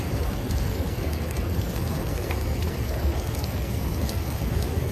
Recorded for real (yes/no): no